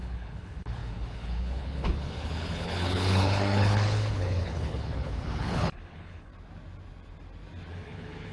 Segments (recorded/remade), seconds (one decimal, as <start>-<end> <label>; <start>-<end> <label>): 0.0-6.3 remade; 6.3-7.7 recorded; 7.7-8.3 remade